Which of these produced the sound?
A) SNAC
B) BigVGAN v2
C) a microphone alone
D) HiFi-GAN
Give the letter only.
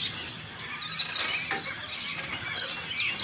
C